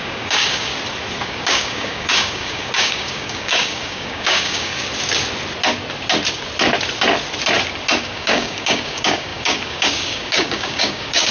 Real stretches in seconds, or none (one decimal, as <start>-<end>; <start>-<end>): 0.7-1.2; 4.9-8.0